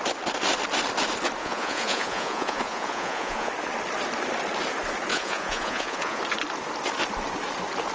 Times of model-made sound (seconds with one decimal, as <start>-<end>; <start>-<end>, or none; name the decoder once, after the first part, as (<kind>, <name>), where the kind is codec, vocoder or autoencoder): 1.4-3.5 (vocoder, Vocos); 5.1-6.2